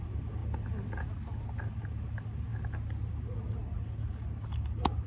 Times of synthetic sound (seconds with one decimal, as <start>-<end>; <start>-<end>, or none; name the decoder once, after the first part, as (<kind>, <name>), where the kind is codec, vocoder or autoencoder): none